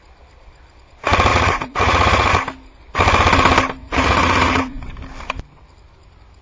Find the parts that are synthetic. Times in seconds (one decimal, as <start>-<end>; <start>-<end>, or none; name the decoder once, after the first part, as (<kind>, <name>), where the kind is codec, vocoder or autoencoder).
1.3-2.3 (vocoder, Vocos); 3.8-4.9